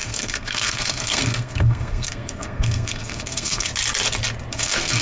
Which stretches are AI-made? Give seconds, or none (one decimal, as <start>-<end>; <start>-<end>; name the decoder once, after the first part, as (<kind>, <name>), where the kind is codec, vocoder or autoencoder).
0.0-3.7 (codec, SNAC); 4.5-5.0